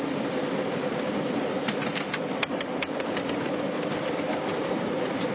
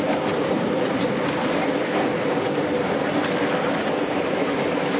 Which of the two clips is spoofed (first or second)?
first